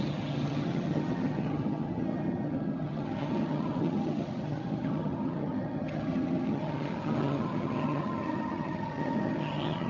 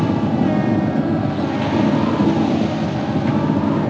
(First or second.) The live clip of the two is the second